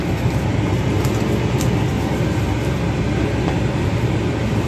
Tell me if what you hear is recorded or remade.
recorded